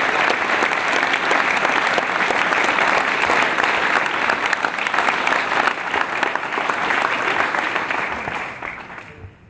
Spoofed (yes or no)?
no